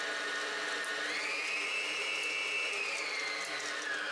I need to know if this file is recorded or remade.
recorded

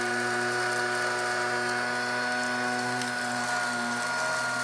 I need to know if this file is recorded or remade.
recorded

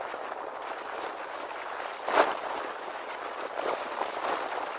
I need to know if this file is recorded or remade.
recorded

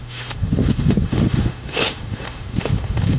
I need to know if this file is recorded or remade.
remade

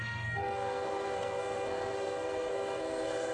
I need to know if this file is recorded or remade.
remade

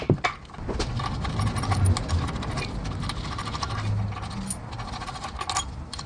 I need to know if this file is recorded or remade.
recorded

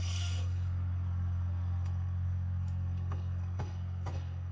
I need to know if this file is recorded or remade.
remade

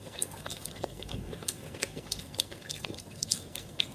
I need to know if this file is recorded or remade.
remade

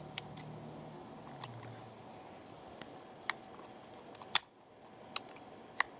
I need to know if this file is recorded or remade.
recorded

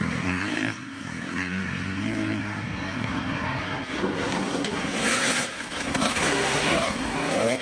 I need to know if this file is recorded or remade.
remade